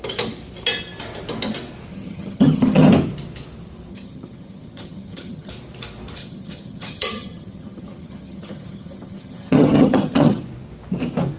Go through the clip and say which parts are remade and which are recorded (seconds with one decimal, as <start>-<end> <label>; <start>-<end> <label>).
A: 0.0-1.9 recorded; 1.9-2.9 remade; 2.9-3.9 recorded; 3.9-5.5 remade; 5.5-6.2 recorded; 6.2-10.4 remade; 10.4-11.4 recorded